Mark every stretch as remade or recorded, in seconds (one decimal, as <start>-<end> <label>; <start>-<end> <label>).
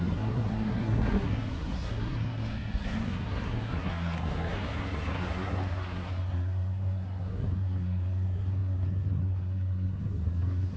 0.0-10.8 remade